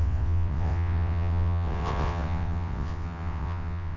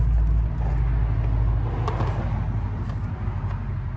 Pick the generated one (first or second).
first